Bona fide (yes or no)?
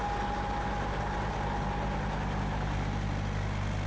yes